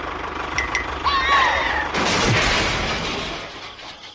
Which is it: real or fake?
real